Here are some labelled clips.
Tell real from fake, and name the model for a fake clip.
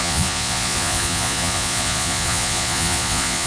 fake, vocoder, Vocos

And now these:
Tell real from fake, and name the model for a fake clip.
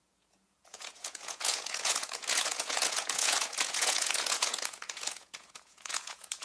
fake, vocoder, Vocos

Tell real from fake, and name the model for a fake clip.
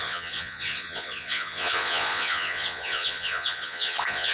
fake, vocoder, Vocos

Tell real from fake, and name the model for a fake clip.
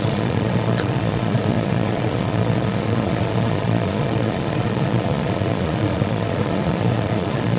fake, vocoder, Vocos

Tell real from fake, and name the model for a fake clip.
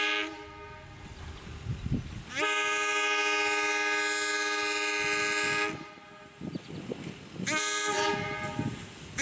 real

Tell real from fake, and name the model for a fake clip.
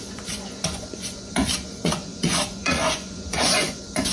fake, vocoder, Vocos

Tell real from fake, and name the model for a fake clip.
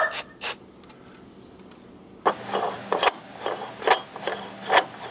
real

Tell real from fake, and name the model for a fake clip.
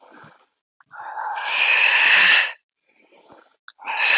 real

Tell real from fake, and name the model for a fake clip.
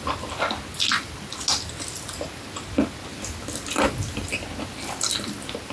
real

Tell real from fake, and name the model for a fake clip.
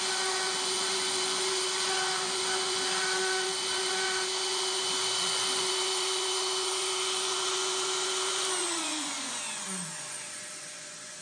fake, vocoder, Vocos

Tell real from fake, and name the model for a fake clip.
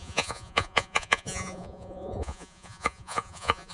fake, vocoder, Vocos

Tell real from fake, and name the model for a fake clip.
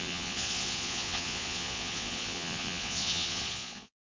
fake, vocoder, Vocos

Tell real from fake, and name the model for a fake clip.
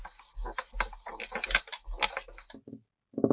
real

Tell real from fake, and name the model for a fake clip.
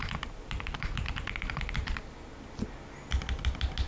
real